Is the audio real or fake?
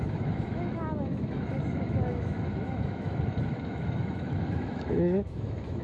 fake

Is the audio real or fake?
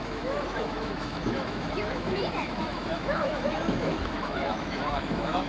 fake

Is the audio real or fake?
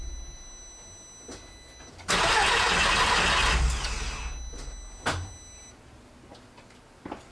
real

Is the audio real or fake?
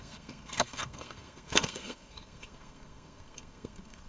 fake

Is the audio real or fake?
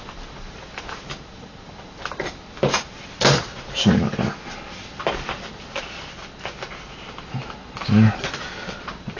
real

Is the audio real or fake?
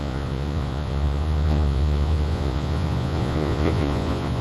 fake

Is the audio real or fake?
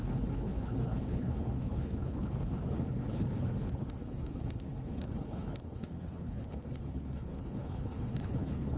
fake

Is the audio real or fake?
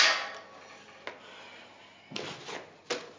real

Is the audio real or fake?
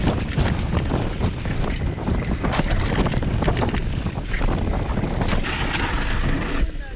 real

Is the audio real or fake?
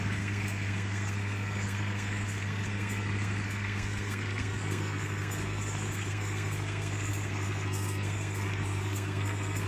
fake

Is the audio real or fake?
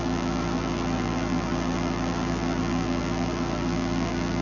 fake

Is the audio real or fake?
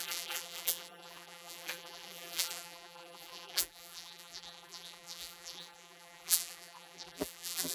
fake